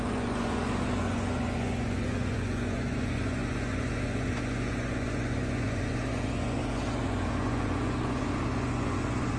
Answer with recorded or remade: remade